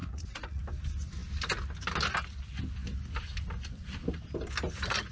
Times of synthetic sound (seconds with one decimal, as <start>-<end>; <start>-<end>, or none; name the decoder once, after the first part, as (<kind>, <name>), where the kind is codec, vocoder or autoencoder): 0.0-0.6 (vocoder, Vocos)